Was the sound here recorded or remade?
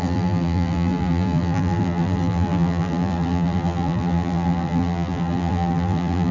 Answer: remade